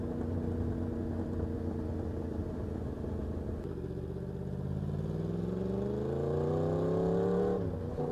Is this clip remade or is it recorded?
recorded